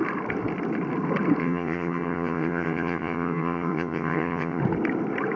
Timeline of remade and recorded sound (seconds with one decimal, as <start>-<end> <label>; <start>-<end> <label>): 0.0-1.4 recorded; 1.4-4.6 remade; 4.6-5.4 recorded